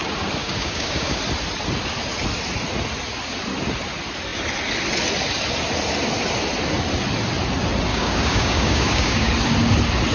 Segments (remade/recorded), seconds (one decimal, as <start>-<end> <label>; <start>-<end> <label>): 0.0-0.4 recorded; 0.4-1.2 remade; 1.2-7.9 recorded; 7.9-9.3 remade; 9.3-10.1 recorded